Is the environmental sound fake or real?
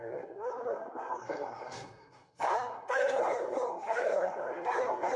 fake